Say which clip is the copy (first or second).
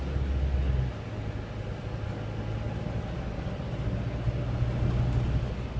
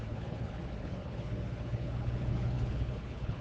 second